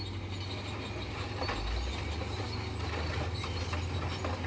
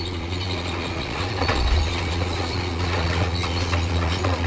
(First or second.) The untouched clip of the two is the first